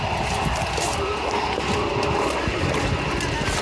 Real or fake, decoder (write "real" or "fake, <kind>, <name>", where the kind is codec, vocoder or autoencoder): real